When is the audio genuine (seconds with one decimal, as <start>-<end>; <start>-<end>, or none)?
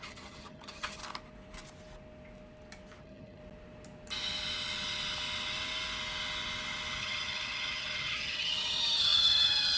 1.0-3.0; 3.4-7.0